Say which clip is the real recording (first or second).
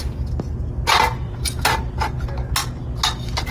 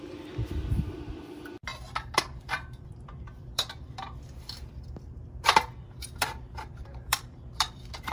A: first